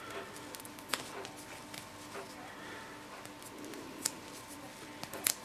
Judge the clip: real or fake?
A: real